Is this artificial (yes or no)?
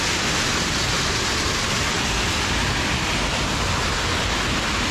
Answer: no